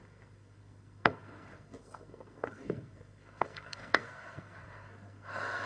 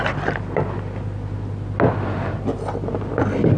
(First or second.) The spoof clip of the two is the first